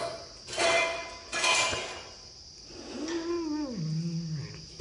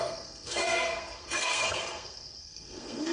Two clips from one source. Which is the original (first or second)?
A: first